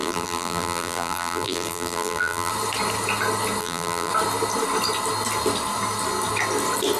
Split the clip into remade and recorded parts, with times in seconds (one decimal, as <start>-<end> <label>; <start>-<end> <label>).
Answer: 0.0-2.5 remade; 2.5-3.6 recorded; 3.6-4.1 remade; 4.1-7.0 recorded